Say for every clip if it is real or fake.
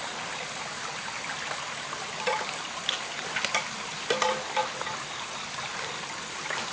real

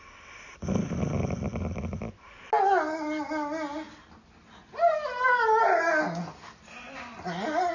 real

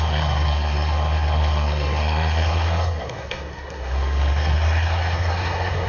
fake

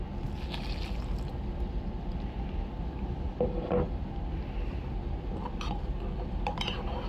real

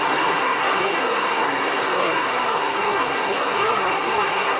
fake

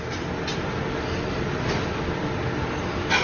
real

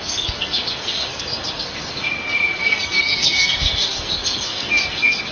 fake